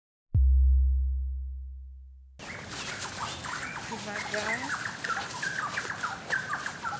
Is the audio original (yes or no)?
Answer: yes